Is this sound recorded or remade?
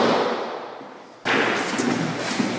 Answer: recorded